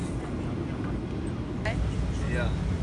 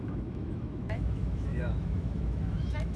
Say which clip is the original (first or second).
first